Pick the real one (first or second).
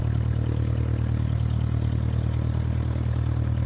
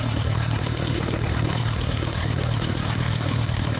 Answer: first